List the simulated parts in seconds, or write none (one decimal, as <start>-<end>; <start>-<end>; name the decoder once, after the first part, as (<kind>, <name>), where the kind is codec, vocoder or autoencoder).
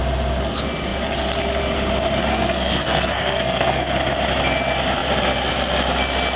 2.3-3.8 (codec, SNAC)